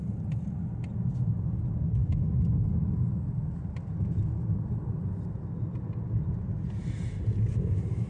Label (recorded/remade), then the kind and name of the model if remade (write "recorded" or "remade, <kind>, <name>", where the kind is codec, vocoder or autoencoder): recorded